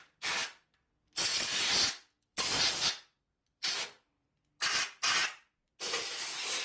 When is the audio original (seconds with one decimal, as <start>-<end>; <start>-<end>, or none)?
0.0-0.4; 0.9-1.3; 4.3-6.6